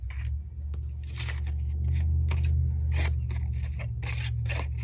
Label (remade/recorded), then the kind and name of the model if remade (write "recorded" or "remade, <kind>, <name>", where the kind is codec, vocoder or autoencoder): recorded